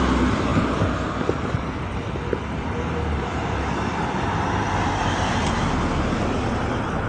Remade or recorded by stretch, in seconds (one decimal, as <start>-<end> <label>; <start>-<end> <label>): 0.0-7.1 recorded